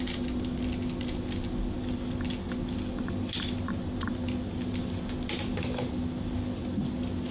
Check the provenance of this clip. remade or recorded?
recorded